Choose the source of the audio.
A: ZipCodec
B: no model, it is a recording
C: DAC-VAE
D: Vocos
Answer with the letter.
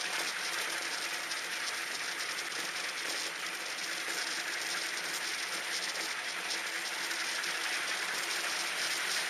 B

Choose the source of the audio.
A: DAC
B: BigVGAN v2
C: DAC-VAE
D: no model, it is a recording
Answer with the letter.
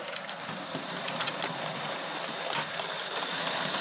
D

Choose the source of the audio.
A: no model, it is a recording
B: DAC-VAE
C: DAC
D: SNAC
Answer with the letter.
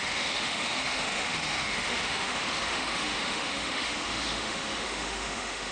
B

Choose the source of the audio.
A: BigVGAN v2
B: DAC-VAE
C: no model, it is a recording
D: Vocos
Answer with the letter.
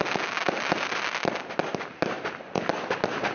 C